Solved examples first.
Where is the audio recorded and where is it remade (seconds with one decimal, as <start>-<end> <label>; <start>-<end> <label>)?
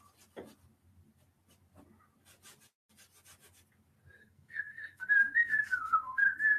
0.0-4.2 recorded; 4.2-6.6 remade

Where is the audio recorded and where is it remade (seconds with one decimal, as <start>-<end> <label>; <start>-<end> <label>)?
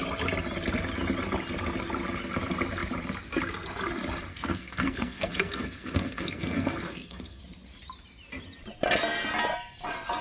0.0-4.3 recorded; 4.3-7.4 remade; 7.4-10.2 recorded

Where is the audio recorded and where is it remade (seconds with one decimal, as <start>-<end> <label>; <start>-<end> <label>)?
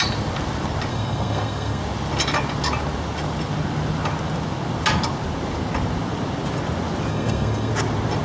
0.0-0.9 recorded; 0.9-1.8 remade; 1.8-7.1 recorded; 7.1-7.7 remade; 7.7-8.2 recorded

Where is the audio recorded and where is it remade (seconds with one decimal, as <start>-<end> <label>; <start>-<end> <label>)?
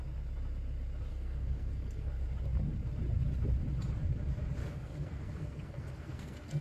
0.0-1.1 recorded; 1.1-2.1 remade; 2.1-4.6 recorded; 4.6-6.6 remade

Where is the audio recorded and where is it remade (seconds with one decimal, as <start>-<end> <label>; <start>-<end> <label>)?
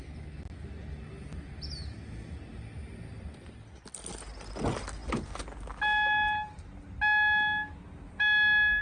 0.0-8.8 recorded